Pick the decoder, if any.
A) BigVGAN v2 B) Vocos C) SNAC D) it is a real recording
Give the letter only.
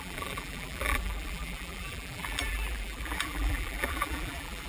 A